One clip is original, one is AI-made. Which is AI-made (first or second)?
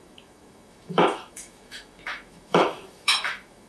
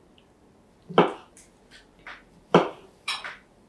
first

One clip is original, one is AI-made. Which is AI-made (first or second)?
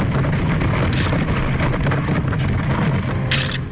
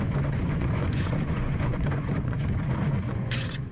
second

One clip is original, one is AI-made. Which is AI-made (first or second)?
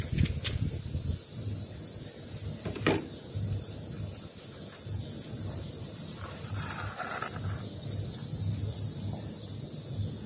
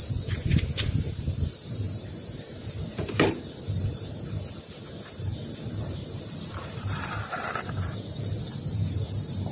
second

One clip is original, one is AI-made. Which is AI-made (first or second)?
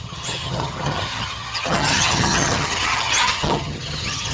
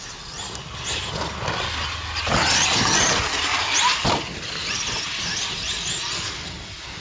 first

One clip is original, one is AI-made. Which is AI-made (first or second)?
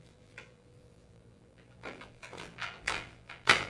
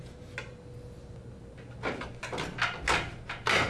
first